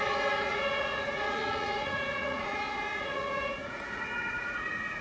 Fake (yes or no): yes